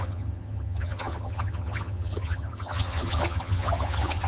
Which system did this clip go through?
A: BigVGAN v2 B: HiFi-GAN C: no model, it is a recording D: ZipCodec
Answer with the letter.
B